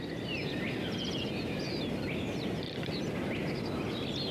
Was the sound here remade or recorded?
recorded